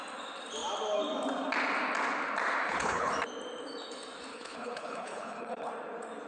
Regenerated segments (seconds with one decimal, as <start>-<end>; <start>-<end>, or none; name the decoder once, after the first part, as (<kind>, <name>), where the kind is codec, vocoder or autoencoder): 2.6-3.1 (codec, HILCodec); 4.3-5.7